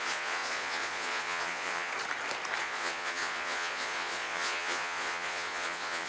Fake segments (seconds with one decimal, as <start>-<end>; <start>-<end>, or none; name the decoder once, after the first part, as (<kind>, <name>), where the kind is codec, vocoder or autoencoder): 0.0-1.9 (vocoder, Vocos); 2.6-6.1